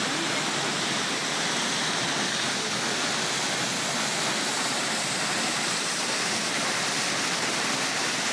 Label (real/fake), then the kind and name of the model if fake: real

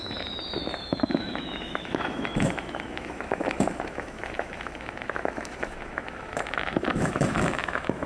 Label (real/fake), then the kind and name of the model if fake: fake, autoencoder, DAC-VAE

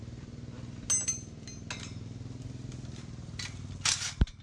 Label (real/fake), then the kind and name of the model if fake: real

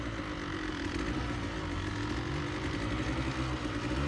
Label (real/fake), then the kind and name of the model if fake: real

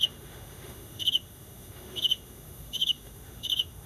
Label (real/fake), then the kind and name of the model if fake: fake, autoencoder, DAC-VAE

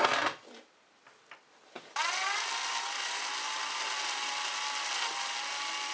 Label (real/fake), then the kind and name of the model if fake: real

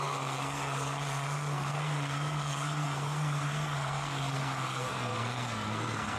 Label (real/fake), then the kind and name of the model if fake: fake, codec, SNAC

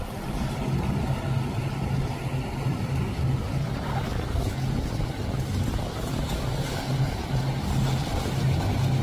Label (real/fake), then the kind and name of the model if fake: real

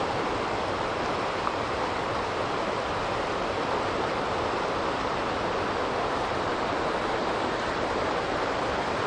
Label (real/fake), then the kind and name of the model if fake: real